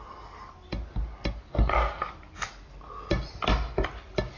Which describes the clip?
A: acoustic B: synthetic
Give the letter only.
A